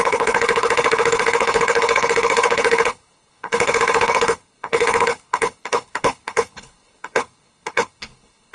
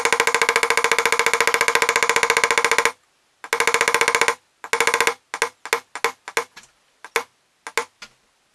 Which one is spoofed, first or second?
first